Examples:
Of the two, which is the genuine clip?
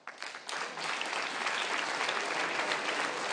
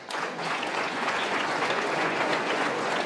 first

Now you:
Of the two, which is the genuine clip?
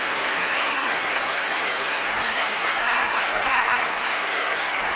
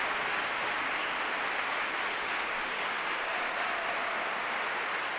second